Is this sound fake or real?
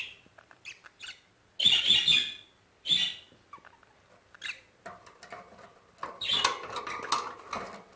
real